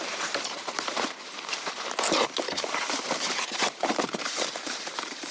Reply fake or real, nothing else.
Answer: fake